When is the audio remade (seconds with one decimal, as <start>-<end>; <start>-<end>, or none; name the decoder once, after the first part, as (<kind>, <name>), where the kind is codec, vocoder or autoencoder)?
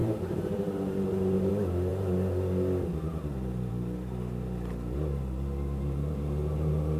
0.0-1.5 (vocoder, BigVGAN v2)